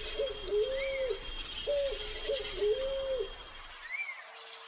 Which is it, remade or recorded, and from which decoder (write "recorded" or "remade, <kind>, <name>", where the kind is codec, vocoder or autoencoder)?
recorded